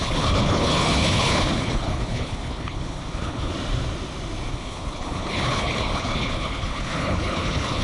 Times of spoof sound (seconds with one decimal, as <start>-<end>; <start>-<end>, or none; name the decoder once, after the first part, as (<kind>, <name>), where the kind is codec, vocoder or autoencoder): 0.0-3.5 (codec, HILCodec); 4.5-7.8